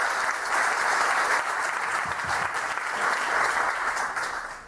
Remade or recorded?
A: recorded